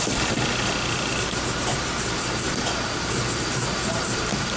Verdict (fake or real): real